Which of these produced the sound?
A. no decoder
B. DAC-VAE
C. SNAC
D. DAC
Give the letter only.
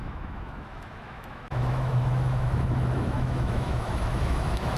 B